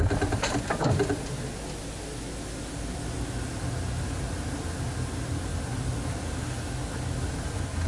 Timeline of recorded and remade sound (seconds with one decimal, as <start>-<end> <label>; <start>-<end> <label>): 0.0-7.9 recorded